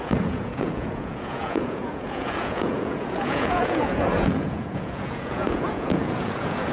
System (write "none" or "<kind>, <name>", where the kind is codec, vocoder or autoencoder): vocoder, Vocos